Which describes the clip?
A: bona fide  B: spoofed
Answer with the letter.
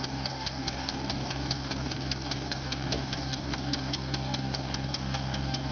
B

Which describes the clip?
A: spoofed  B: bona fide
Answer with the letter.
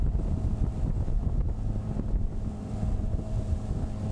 B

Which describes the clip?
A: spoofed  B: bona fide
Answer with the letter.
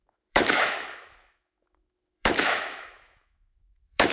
A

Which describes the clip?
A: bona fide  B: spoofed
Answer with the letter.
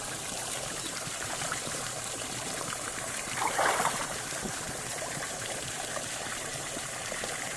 B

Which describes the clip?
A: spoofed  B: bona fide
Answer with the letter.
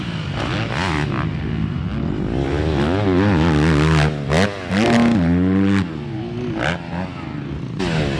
B